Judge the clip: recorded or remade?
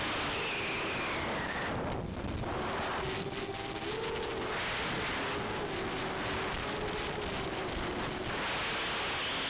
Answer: recorded